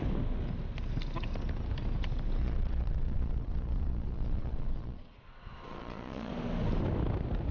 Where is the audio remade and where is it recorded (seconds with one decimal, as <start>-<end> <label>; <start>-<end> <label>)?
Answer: 0.0-2.4 recorded; 2.4-6.3 remade; 6.3-7.5 recorded